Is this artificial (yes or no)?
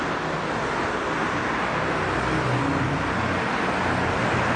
no